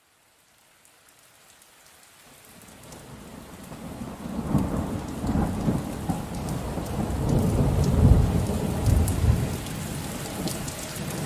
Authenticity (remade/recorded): recorded